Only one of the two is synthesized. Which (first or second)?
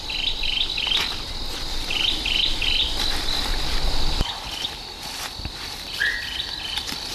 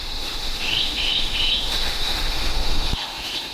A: second